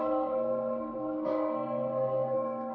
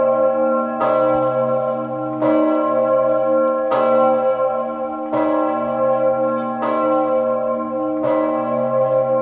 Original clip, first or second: second